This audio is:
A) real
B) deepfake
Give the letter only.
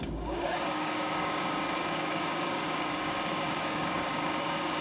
B